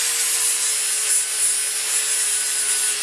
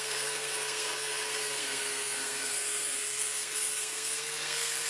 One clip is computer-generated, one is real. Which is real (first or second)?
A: first